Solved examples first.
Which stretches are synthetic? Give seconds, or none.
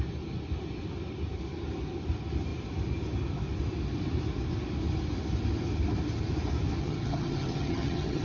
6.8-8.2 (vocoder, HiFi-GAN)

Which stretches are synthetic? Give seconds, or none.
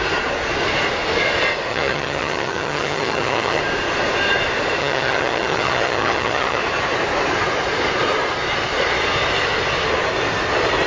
1.7-3.6 (vocoder, HiFi-GAN); 4.8-6.6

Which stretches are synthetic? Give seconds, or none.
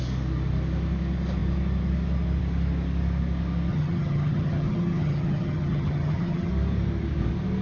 3.7-6.5 (vocoder, HiFi-GAN)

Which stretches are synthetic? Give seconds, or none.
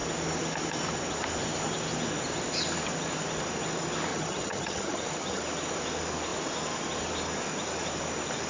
4.1-5.4 (vocoder, HiFi-GAN)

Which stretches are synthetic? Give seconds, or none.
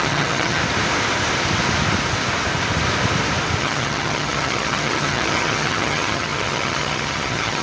0.0-0.6 (vocoder, HiFi-GAN); 3.6-7.6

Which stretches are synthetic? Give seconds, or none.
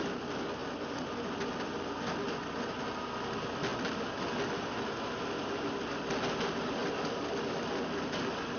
none